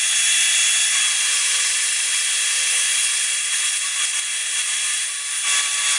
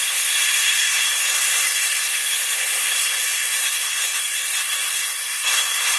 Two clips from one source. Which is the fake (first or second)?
second